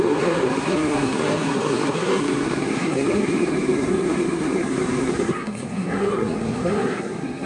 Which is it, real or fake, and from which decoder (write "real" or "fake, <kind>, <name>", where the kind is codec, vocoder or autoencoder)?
fake, codec, SNAC